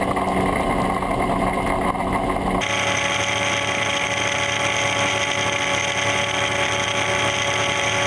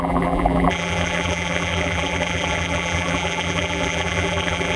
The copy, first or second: second